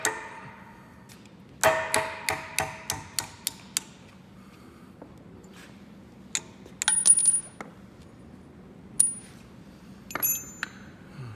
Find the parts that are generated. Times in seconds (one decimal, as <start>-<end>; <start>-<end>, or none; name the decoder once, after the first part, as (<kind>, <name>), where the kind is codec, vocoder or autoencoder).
none